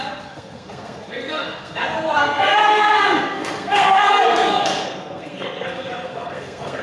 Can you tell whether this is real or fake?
fake